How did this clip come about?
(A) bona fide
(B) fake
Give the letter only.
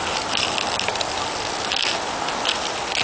A